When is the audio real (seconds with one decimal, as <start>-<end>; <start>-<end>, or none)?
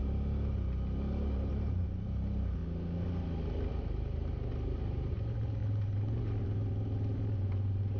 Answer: 0.0-1.5; 2.6-3.7